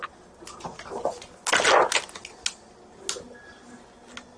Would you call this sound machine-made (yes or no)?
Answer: no